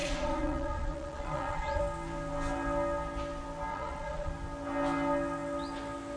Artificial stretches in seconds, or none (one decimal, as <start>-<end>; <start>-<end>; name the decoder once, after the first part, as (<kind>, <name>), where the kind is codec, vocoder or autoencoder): 0.0-1.8 (vocoder, Vocos); 3.7-4.3

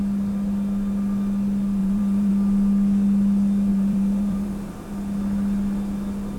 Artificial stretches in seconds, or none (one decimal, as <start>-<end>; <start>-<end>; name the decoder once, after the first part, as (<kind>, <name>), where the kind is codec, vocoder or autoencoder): 1.8-2.3 (vocoder, BigVGAN v2); 3.7-4.7

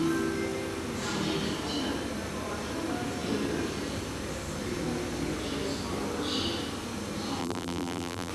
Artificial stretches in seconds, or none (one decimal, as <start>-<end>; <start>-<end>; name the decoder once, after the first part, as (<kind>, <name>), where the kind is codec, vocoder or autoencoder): 7.4-8.3 (vocoder, BigVGAN v2)

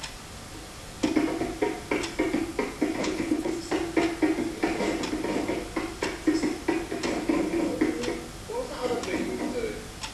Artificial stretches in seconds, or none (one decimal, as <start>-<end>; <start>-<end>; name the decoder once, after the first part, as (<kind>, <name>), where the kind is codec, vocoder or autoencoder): 3.0-3.5 (codec, HILCodec)

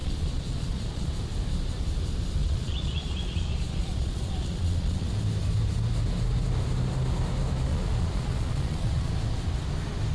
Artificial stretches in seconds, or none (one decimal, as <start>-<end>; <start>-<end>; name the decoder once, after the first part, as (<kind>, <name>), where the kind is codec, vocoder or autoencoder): 0.0-1.1 (vocoder, Vocos); 2.4-5.1; 7.7-9.1

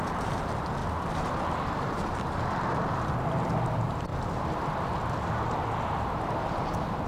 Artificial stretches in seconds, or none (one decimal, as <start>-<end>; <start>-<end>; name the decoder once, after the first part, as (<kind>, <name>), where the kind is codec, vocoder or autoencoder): 0.0-0.8 (vocoder, BigVGAN v2); 1.7-4.1; 5.9-7.1

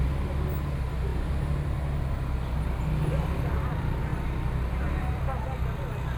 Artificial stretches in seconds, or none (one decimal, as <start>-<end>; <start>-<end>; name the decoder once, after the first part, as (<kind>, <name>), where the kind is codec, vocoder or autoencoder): 4.1-4.8 (vocoder, BigVGAN v2)